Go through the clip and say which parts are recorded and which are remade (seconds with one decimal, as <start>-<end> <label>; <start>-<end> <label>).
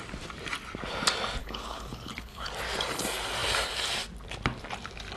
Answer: 0.0-1.4 recorded; 1.4-2.5 remade; 2.5-5.2 recorded